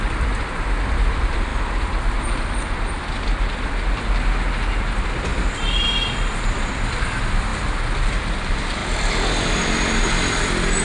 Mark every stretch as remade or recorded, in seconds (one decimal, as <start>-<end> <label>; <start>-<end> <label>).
0.0-1.5 remade; 1.5-4.8 recorded; 4.8-5.3 remade; 5.3-6.3 recorded; 6.3-7.5 remade; 7.5-8.0 recorded; 8.0-8.8 remade; 8.8-9.3 recorded; 9.3-10.8 remade